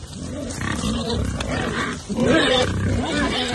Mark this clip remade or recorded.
recorded